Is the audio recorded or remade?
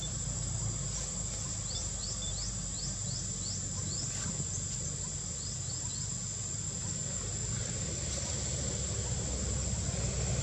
recorded